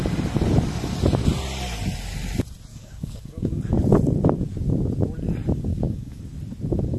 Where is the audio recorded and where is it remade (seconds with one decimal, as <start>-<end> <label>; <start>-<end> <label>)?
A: 0.0-2.7 recorded; 2.7-3.6 remade; 3.6-5.7 recorded; 5.7-6.2 remade; 6.2-7.0 recorded